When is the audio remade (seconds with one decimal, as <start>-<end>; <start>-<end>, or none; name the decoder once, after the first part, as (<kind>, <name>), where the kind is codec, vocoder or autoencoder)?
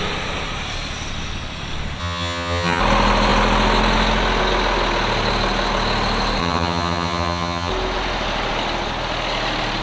2.0-2.8 (vocoder, HiFi-GAN); 6.4-7.7